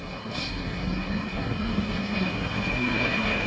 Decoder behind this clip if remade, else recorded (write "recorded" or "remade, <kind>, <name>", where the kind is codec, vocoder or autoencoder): remade, codec, SNAC